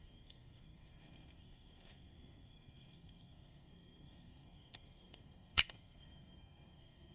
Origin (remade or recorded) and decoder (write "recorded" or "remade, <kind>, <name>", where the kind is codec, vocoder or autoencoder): remade, codec, SNAC